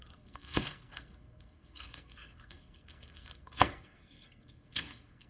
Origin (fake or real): fake